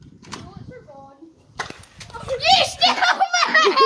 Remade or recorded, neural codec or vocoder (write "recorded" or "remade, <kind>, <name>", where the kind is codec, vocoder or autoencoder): recorded